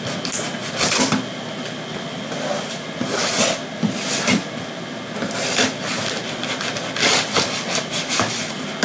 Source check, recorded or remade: recorded